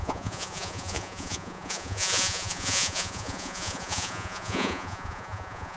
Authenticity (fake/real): fake